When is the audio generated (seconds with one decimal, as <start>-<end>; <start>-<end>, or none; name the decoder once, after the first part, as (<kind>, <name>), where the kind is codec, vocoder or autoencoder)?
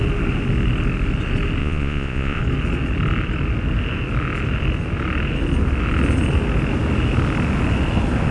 1.6-2.4 (vocoder, Vocos)